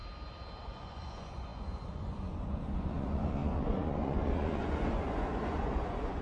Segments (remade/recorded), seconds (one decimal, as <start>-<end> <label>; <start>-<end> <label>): 0.0-0.6 recorded; 0.6-6.2 remade